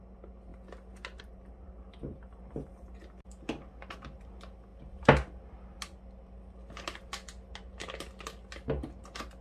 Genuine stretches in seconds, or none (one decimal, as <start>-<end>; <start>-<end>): 0.0-9.4